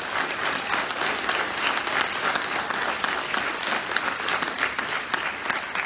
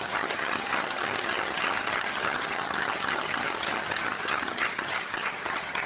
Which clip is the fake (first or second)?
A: second